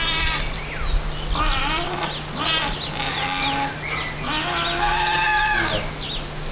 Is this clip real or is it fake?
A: real